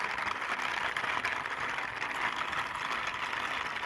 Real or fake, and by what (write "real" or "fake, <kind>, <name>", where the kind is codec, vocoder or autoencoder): real